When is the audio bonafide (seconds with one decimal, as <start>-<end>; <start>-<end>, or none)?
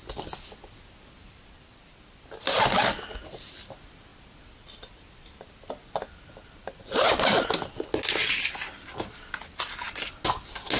0.0-10.8